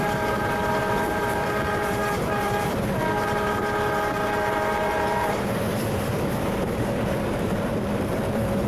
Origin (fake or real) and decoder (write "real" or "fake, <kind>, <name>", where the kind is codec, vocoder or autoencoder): fake, vocoder, BigVGAN v2